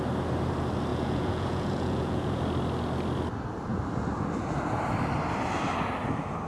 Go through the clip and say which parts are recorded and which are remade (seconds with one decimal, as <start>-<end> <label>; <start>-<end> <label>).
0.0-0.9 recorded; 0.9-2.4 remade; 2.4-6.5 recorded